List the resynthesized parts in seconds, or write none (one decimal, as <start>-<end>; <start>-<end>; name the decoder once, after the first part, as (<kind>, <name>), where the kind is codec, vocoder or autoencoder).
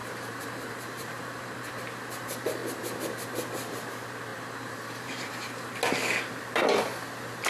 0.0-1.7 (vocoder, BigVGAN v2); 4.3-5.8